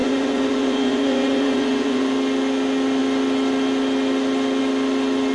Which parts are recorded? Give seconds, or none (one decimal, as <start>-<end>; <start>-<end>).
2.1-5.3